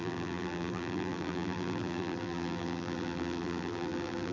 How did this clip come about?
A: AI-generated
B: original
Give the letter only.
A